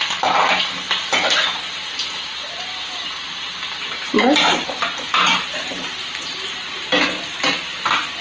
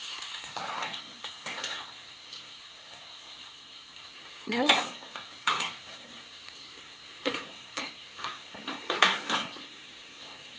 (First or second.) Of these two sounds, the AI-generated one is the second